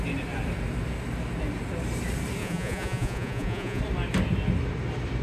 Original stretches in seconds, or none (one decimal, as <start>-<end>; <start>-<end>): 0.0-2.4; 3.8-5.2